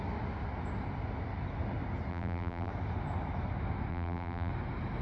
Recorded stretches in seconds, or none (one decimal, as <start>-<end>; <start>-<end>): 0.0-2.1; 2.7-3.9; 4.5-5.0